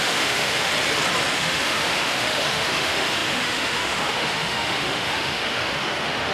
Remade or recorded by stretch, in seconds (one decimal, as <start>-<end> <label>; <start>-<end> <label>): 0.0-0.7 remade; 0.7-1.3 recorded; 1.3-6.3 remade